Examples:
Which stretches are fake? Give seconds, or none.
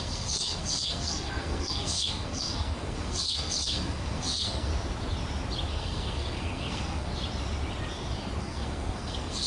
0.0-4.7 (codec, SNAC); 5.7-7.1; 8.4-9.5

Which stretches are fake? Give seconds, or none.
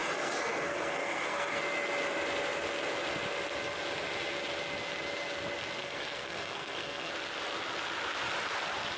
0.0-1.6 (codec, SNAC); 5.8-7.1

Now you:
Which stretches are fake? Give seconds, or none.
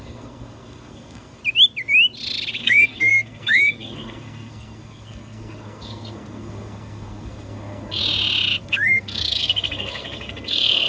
0.0-1.4 (codec, SNAC); 2.6-8.0; 8.6-10.9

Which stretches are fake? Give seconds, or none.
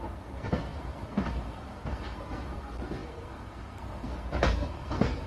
0.0-5.3 (codec, SNAC)